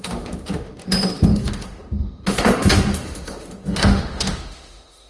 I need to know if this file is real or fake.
fake